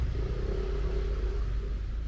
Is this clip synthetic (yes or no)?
no